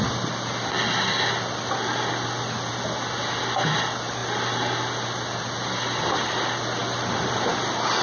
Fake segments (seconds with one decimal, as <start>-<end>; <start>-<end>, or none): none